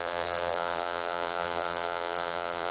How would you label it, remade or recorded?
remade